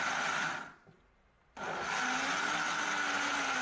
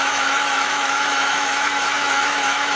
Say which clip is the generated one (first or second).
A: second